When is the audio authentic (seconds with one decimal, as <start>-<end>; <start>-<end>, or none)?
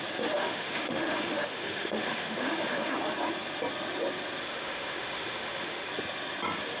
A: 0.0-0.4; 3.0-4.4; 5.9-6.8